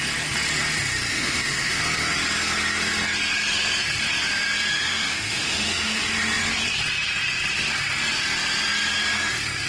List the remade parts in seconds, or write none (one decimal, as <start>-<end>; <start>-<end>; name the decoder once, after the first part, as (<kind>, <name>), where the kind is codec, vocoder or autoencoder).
1.1-1.8 (autoencoder, DAC-VAE); 4.7-6.0